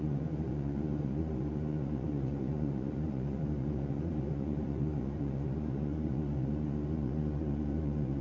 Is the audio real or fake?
fake